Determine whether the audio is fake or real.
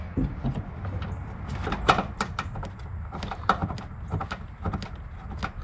real